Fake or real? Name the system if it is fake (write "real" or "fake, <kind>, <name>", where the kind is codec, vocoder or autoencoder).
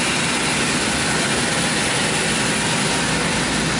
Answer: real